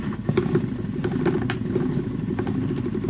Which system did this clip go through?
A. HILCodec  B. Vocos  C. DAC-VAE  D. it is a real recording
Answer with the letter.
D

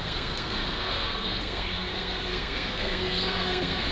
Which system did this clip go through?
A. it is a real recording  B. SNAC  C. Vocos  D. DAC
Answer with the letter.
B